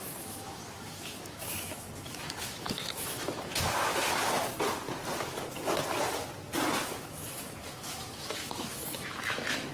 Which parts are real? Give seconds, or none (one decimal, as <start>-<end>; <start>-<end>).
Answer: 3.9-6.9